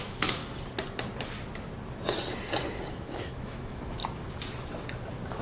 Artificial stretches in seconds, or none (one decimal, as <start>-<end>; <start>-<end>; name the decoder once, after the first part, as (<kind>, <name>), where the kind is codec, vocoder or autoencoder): 0.0-0.4 (autoencoder, DAC-VAE); 2.9-4.0